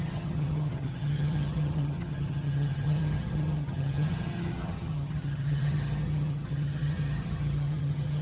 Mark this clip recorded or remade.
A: remade